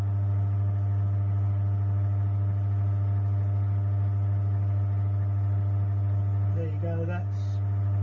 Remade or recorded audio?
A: recorded